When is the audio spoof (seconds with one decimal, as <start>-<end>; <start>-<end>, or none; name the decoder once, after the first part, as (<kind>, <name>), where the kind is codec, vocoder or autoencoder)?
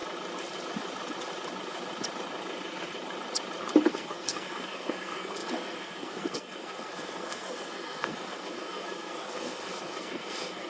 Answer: 3.9-10.7 (codec, SNAC)